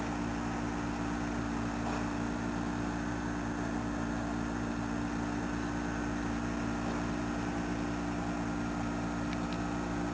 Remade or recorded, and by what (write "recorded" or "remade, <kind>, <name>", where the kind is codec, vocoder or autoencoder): recorded